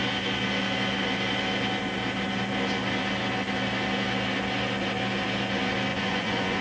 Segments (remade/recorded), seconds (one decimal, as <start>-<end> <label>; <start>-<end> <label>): 0.0-5.9 recorded; 5.9-6.6 remade